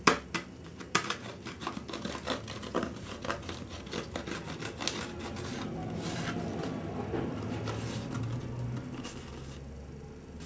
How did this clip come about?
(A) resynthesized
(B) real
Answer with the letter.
B